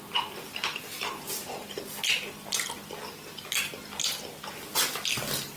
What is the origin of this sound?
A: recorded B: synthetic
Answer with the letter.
A